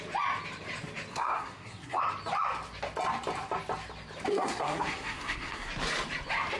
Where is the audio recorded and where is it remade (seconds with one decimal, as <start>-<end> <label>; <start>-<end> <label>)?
0.0-1.1 recorded; 1.1-2.0 remade; 2.0-4.3 recorded; 4.3-5.7 remade; 5.7-6.6 recorded